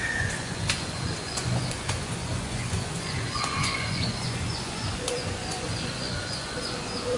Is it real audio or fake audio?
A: fake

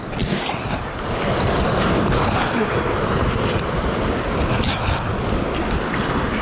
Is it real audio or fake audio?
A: real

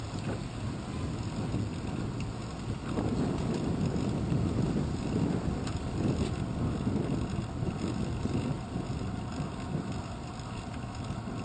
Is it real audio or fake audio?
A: real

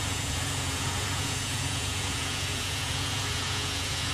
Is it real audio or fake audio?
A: fake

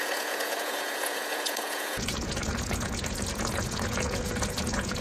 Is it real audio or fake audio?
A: fake